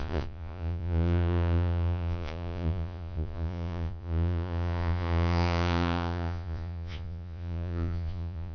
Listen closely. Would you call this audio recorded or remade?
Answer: remade